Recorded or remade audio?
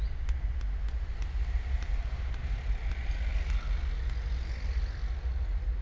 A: recorded